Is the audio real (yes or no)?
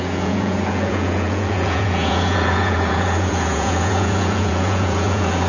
no